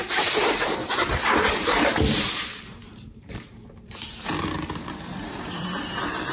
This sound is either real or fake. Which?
fake